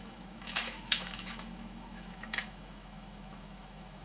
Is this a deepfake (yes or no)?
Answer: yes